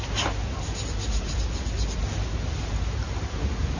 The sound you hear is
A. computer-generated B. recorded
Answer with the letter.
B